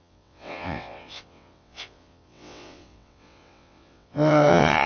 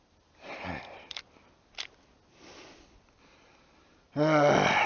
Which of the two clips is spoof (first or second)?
first